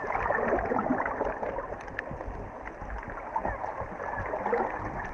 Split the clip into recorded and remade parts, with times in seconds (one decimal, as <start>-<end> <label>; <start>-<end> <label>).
0.0-5.1 recorded